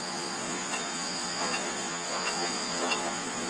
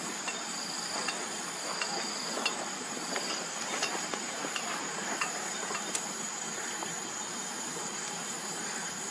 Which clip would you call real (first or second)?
second